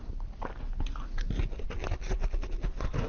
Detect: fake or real real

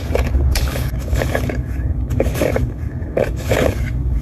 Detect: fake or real fake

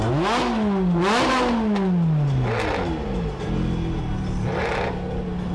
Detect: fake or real real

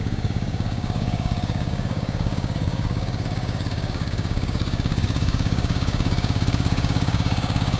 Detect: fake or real fake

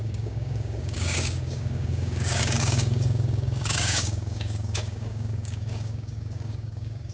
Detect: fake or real fake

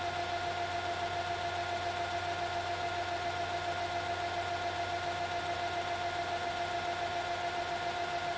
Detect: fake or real real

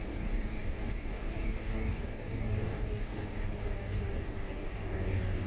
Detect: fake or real fake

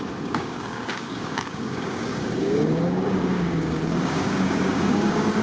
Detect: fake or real fake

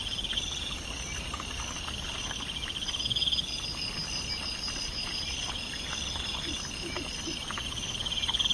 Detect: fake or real real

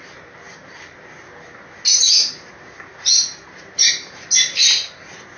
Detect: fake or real real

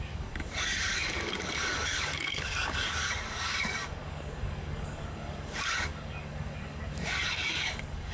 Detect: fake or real fake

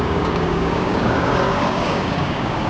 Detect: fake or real fake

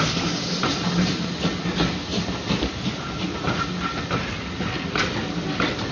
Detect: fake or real real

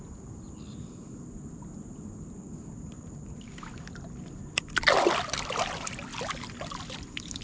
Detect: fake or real real